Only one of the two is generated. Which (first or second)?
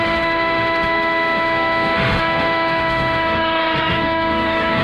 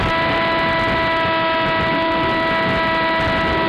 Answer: first